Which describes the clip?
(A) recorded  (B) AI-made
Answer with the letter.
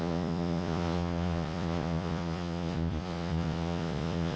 B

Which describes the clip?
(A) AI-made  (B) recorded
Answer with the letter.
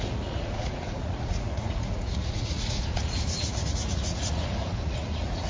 A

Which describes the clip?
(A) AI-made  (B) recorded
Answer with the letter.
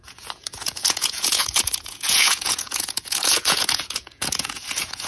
A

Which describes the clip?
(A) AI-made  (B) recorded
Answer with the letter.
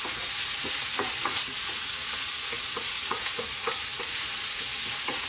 A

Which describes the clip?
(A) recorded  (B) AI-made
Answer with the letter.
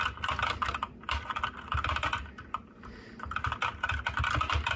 A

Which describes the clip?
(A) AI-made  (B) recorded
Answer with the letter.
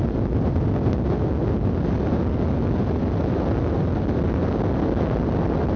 B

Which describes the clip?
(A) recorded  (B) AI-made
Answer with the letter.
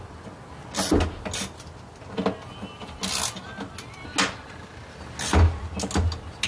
A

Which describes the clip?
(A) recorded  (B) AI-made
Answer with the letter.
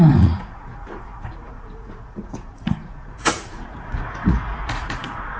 B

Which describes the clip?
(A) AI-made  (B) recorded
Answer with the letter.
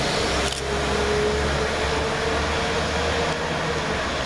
B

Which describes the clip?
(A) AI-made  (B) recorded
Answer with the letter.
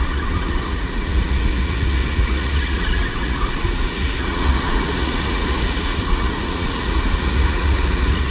A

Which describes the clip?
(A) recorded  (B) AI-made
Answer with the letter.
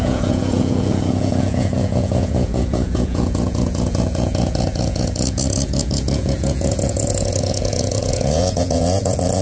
B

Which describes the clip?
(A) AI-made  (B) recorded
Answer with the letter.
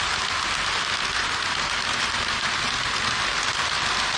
B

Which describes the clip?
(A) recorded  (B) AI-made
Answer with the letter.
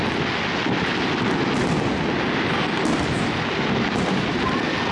A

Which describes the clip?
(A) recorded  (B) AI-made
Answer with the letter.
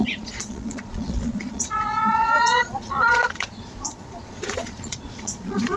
B